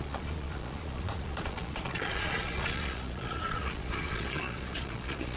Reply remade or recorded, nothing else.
remade